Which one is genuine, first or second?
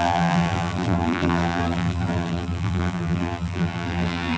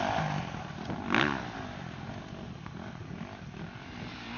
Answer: second